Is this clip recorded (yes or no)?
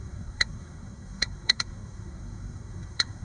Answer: no